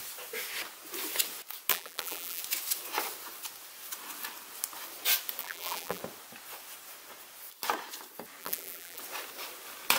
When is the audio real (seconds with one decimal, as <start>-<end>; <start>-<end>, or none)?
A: 0.0-1.7; 2.4-5.4; 6.0-8.4; 9.0-10.0